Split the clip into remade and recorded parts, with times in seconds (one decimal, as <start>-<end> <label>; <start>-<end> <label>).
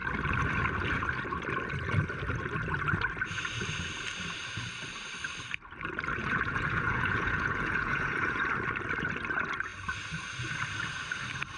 0.0-6.2 recorded; 6.2-8.4 remade; 8.4-11.6 recorded